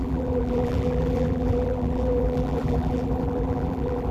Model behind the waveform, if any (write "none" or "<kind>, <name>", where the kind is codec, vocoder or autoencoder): vocoder, BigVGAN v2